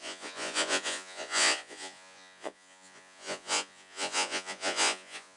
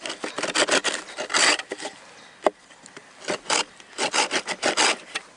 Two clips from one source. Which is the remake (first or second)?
first